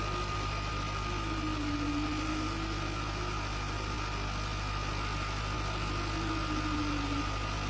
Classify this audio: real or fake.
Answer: real